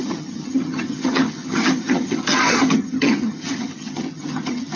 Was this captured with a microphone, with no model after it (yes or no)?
no